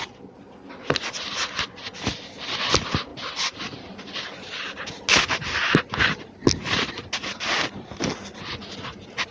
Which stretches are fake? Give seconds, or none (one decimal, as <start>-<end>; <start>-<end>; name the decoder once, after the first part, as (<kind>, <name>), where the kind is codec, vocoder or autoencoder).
none